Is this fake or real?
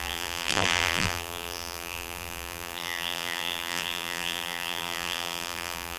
fake